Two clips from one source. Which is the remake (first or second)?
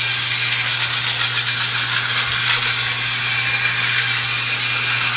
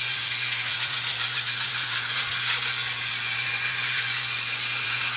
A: second